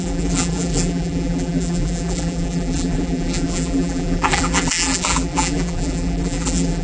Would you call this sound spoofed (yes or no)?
yes